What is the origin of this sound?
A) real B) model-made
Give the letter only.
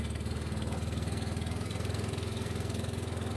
B